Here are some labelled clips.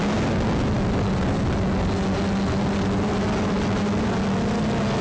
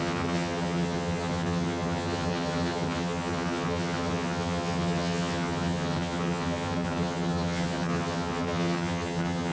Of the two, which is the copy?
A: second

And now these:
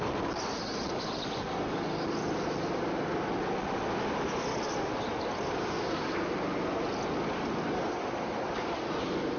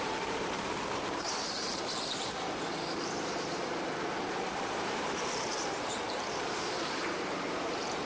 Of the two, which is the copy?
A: second